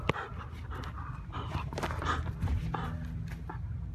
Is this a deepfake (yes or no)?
no